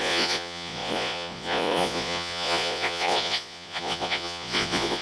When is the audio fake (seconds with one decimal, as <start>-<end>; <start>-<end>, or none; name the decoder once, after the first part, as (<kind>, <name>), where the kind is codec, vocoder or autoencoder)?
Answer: 0.0-5.0 (vocoder, Vocos)